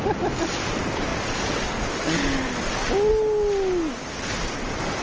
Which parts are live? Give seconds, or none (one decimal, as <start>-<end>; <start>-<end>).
0.0-5.0